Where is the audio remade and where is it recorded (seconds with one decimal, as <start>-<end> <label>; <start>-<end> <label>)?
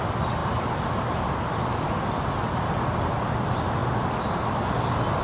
0.0-5.2 recorded